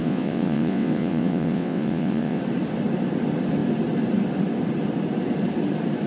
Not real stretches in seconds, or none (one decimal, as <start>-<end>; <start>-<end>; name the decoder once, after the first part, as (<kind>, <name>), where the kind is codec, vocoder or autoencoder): 0.0-2.4 (vocoder, WaveNeXt)